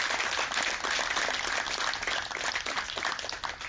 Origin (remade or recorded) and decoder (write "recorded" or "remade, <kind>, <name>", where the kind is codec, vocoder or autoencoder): recorded